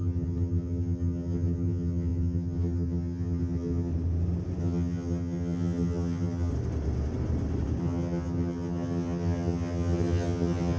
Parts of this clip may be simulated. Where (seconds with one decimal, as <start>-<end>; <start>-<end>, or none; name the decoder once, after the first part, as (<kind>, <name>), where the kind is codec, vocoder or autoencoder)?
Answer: 0.0-3.9 (vocoder, HiFi-GAN); 4.6-6.5; 7.8-10.8